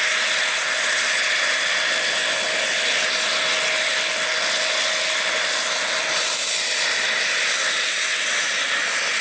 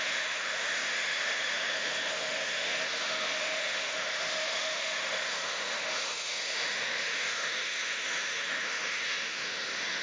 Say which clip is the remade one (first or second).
second